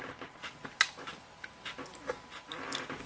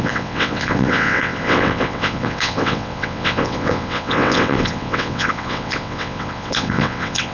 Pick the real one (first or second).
first